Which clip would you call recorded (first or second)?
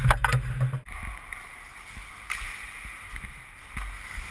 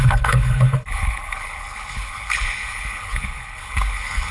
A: first